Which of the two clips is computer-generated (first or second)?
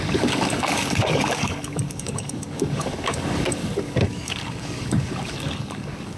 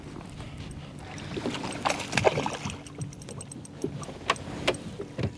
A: first